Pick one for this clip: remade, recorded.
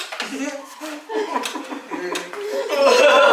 recorded